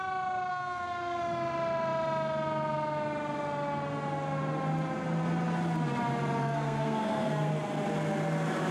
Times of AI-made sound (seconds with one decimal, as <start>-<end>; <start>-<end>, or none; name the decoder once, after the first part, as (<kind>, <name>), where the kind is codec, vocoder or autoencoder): 0.5-1.2 (codec, SNAC); 6.4-7.5